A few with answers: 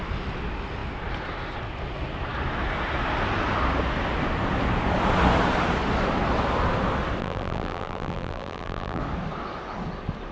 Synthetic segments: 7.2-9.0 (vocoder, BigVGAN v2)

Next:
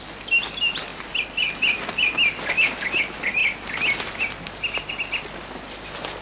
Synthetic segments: none

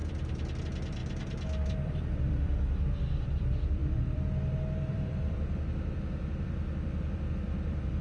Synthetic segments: 0.6-8.0 (vocoder, BigVGAN v2)

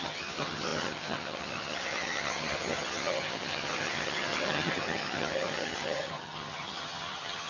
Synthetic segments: 0.0-7.5 (vocoder, HiFi-GAN)

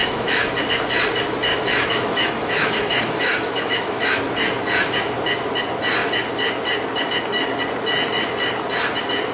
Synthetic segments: 0.0-0.6 (autoencoder, DAC-VAE); 1.5-4.2

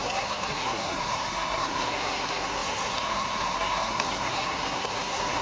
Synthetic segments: 0.0-5.4 (codec, SNAC)

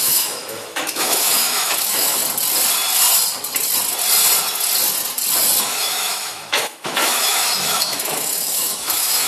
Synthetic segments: 0.0-2.2 (autoencoder, DAC-VAE); 5.6-9.3

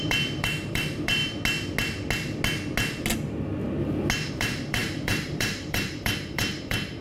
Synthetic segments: 0.0-1.2 (vocoder, BigVGAN v2); 4.3-7.0